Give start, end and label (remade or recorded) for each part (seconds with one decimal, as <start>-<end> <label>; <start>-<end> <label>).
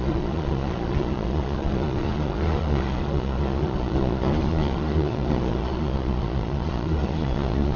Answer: 0.0-7.8 remade